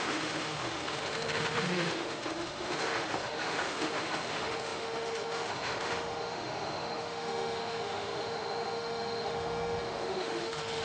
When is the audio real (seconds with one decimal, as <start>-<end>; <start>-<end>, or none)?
none